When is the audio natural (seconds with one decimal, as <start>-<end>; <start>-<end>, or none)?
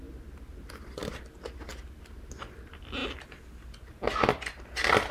0.0-5.1